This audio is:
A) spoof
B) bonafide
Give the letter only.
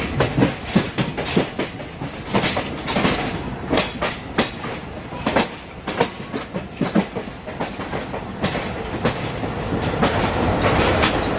B